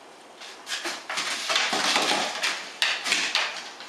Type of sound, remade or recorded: recorded